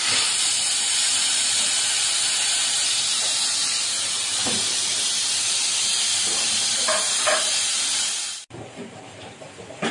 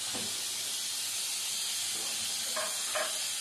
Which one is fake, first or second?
first